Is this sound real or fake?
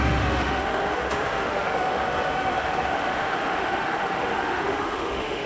fake